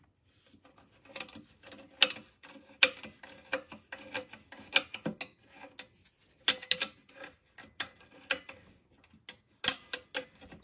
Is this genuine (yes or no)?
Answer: yes